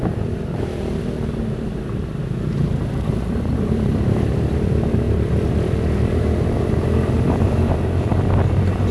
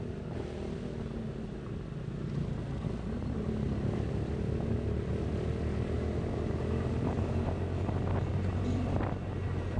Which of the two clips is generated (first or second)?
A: first